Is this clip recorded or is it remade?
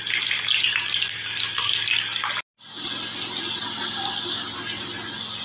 recorded